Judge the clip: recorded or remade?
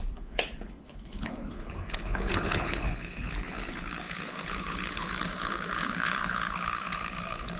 remade